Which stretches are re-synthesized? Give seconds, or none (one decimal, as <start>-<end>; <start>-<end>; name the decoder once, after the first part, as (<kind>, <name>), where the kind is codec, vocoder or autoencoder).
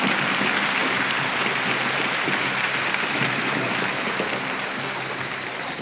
0.8-4.3 (vocoder, BigVGAN v2)